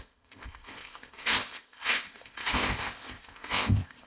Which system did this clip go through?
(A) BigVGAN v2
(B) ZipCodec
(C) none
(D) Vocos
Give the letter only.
B